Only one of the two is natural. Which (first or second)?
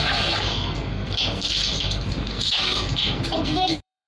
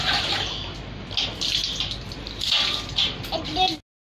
second